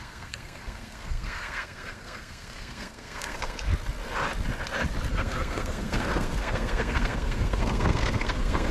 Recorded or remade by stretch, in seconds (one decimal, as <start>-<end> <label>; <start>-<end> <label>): 0.0-3.7 remade; 3.7-5.1 recorded; 5.1-8.7 remade